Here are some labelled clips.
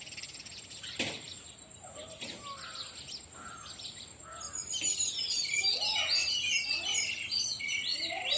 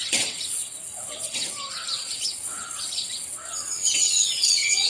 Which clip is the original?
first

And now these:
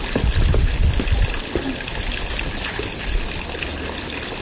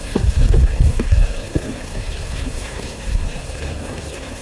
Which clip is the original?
first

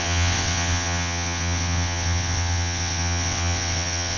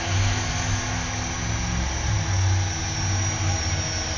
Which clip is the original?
second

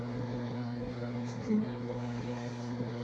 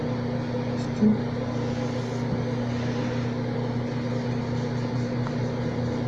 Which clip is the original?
second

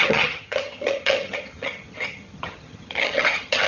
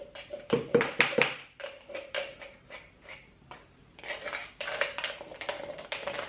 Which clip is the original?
second